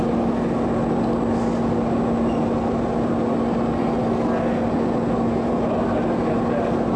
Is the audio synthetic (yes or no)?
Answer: no